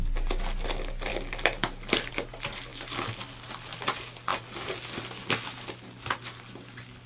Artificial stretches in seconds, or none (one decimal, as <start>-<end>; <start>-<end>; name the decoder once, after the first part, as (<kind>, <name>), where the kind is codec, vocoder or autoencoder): none